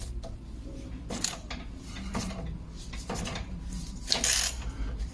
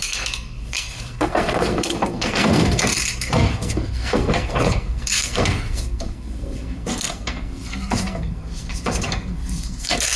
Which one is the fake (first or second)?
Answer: second